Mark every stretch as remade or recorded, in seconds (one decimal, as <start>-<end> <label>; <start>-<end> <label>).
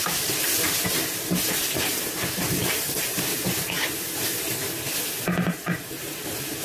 0.0-3.3 remade; 3.3-5.5 recorded; 5.5-6.6 remade